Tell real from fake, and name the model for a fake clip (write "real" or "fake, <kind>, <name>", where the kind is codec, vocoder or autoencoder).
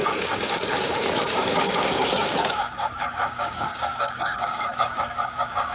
fake, codec, DAC